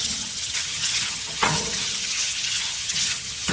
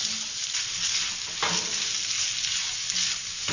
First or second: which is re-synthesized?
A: first